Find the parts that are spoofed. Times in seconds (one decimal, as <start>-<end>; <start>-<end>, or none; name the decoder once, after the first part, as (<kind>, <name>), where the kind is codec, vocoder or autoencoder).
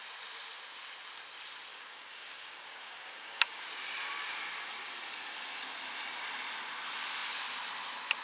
1.7-3.6 (codec, DAC)